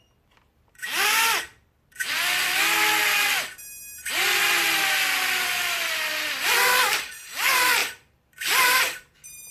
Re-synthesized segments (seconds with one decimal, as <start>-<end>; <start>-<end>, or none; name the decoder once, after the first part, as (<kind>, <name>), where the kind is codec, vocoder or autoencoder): 0.0-1.5 (vocoder, BigVGAN v2); 5.0-6.1; 7.0-9.5